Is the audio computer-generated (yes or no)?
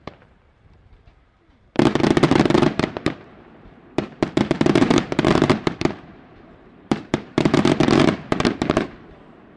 yes